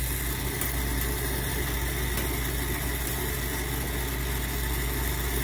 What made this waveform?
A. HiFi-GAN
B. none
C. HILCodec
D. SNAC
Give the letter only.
B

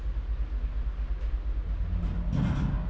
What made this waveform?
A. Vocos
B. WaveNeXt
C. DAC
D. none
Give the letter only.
D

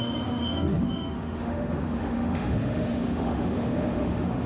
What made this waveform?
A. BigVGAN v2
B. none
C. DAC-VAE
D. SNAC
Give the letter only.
C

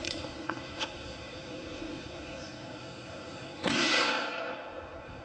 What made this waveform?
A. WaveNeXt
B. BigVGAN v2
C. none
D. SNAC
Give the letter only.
D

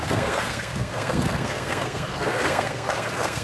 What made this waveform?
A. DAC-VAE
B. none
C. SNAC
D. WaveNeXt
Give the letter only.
C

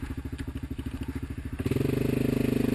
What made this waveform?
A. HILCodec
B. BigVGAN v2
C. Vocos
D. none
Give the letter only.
D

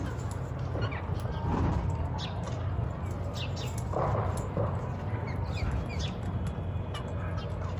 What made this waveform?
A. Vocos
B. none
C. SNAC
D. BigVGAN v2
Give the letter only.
B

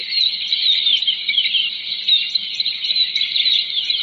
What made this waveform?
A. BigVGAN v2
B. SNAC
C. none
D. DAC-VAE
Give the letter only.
C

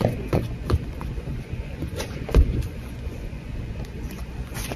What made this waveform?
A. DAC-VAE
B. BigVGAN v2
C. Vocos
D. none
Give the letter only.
C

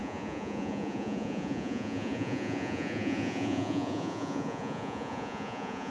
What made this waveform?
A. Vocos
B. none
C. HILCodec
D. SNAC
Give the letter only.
A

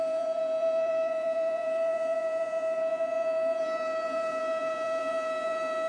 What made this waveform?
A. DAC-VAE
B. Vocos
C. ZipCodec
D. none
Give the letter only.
B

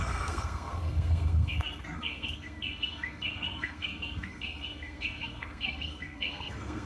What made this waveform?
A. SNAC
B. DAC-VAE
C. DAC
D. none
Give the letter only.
A